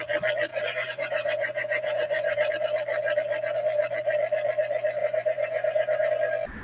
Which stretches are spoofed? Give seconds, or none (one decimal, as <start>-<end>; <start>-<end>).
0.5-2.5; 5.0-6.1